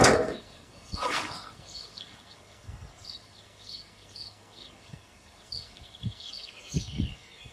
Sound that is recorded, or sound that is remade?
remade